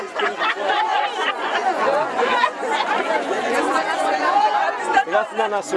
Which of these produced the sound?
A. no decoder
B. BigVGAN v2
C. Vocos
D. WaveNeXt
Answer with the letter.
C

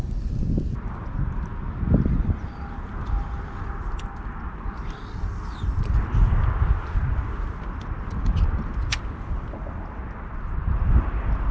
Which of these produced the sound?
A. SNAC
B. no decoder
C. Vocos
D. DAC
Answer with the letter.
B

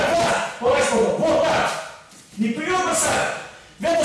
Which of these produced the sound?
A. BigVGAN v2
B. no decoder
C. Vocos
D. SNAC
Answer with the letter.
B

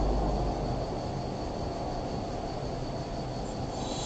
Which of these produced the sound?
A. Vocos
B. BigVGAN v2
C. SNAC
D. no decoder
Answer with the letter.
D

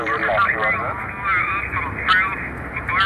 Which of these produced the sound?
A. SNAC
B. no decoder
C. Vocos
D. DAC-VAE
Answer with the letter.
B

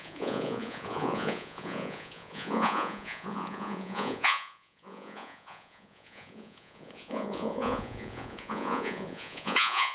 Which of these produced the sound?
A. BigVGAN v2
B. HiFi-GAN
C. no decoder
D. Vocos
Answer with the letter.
D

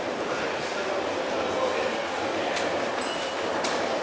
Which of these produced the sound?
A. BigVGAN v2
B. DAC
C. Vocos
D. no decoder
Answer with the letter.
D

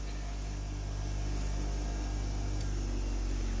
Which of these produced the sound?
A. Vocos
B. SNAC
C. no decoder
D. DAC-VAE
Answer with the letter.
C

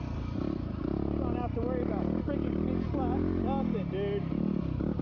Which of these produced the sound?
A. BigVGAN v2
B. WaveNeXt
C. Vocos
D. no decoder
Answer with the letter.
D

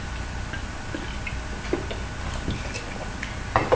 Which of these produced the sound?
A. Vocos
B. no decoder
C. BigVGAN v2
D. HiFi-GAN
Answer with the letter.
B